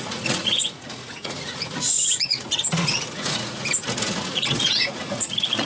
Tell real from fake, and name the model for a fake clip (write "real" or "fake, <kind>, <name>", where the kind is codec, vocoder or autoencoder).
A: fake, vocoder, Vocos